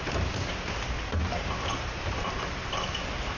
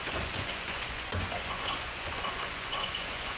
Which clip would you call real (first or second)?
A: first